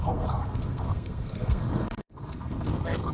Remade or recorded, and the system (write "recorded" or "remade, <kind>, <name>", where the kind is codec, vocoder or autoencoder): remade, codec, SNAC